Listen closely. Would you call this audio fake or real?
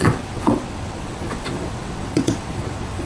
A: fake